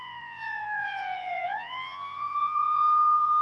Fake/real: fake